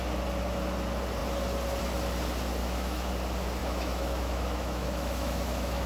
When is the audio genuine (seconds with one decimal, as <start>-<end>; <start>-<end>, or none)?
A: 0.0-2.6; 3.1-3.6